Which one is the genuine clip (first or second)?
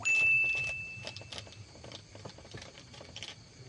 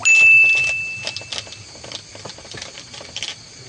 second